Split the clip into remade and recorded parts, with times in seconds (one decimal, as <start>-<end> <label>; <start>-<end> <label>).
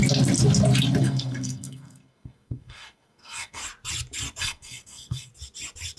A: 0.0-1.0 recorded; 1.0-3.6 remade; 3.6-4.4 recorded; 4.4-5.3 remade; 5.3-6.0 recorded